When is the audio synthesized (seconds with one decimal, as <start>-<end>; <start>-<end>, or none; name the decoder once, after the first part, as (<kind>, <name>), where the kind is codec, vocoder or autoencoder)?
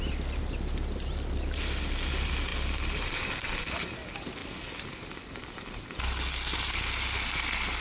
none